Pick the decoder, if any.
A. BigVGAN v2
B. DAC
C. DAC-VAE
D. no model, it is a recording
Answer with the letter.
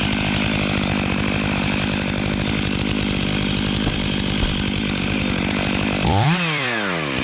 A